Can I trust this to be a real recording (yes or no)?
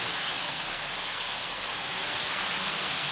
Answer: no